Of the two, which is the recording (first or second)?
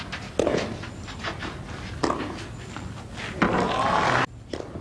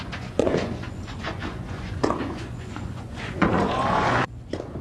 first